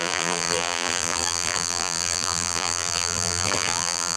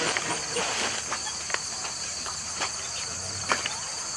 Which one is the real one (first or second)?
second